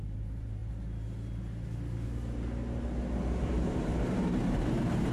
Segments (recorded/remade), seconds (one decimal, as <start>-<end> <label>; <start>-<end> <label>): 0.0-0.6 remade; 0.6-3.4 recorded; 3.4-5.1 remade

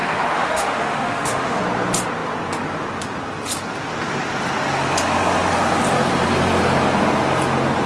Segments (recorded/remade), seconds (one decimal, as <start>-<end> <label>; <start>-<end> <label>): 0.0-1.6 remade; 1.6-7.9 recorded

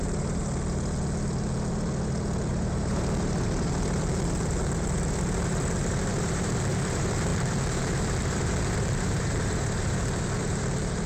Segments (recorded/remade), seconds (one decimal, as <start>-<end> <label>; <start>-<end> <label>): 0.0-0.4 remade; 0.4-2.5 recorded; 2.5-11.1 remade

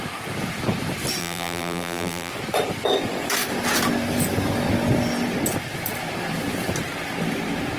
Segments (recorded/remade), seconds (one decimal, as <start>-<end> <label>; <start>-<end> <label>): 0.0-1.2 recorded; 1.2-2.3 remade; 2.3-7.8 recorded